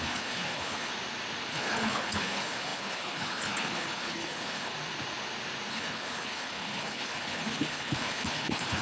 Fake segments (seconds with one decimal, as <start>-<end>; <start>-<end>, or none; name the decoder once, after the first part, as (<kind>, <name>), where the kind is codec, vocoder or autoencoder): 0.0-0.9 (codec, HILCodec); 1.5-4.7; 5.7-8.8